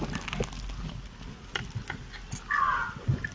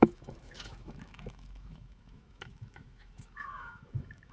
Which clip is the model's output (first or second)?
second